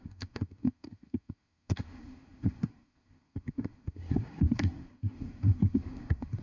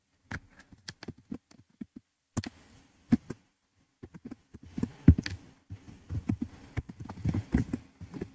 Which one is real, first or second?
second